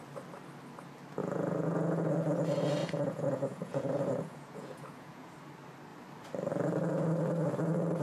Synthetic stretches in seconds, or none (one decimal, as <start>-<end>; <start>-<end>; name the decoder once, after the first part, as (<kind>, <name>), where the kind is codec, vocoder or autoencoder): 1.2-2.1 (vocoder, Vocos); 2.8-5.3